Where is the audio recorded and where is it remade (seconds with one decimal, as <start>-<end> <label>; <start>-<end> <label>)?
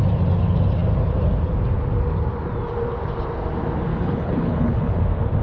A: 0.0-3.9 recorded; 3.9-5.0 remade; 5.0-5.4 recorded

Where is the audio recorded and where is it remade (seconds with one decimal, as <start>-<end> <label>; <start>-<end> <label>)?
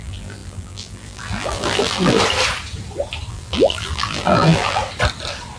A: 0.0-2.2 remade; 2.2-3.3 recorded; 3.3-4.8 remade; 4.8-5.6 recorded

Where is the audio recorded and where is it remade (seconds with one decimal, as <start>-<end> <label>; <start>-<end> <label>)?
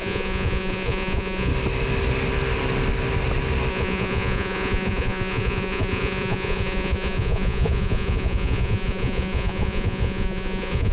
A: 0.0-1.5 remade; 1.5-3.7 recorded; 3.7-10.9 remade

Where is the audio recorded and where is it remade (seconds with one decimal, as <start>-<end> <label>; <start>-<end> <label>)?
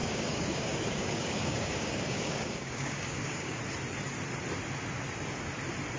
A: 0.0-3.6 remade; 3.6-6.0 recorded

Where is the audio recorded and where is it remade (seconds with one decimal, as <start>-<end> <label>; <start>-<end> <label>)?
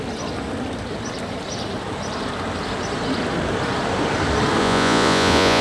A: 0.0-4.6 recorded; 4.6-5.6 remade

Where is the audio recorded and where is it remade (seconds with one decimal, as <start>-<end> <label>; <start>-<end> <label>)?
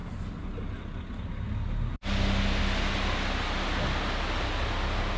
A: 0.0-5.2 recorded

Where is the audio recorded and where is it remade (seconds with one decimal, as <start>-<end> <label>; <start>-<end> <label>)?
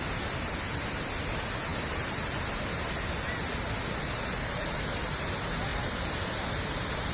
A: 0.0-5.7 recorded; 5.7-6.3 remade; 6.3-7.1 recorded